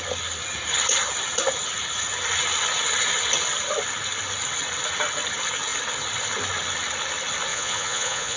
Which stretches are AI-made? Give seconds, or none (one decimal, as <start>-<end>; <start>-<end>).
7.5-8.4